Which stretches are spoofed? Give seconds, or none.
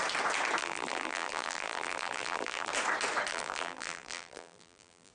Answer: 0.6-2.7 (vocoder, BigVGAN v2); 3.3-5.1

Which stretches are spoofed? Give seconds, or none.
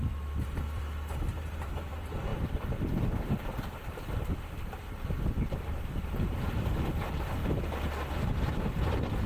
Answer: 0.0-7.4 (vocoder, BigVGAN v2); 8.5-9.3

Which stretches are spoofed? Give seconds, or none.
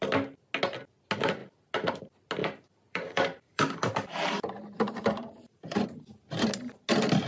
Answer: 2.4-5.9 (vocoder, BigVGAN v2)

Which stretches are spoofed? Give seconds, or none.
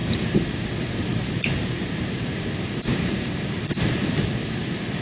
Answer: 0.0-0.5 (vocoder, BigVGAN v2); 1.1-4.1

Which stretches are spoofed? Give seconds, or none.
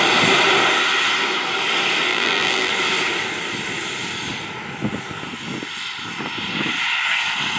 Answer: 2.1-2.7 (vocoder, BigVGAN v2)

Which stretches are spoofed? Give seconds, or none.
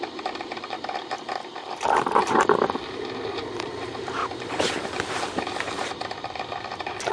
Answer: 0.0-4.2 (vocoder, BigVGAN v2); 4.8-7.1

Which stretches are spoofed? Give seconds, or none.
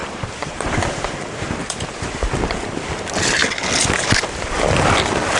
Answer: 0.0-0.7 (vocoder, BigVGAN v2); 1.6-2.3